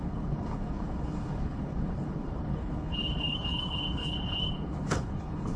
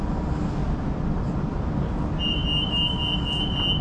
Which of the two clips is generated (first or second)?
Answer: first